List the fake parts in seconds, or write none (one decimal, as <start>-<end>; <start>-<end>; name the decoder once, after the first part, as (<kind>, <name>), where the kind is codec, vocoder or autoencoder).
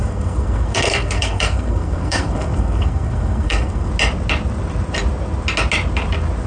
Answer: 0.0-3.9 (codec, SNAC)